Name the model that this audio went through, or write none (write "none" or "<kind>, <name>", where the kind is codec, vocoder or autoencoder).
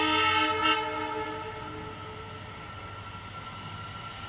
none